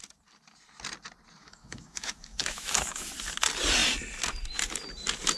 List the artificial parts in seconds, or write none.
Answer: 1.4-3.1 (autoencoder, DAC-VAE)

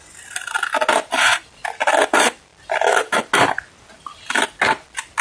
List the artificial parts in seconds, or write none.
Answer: none

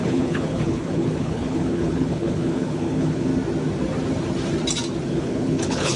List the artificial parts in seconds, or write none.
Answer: 0.0-3.3 (codec, HILCodec); 5.1-6.0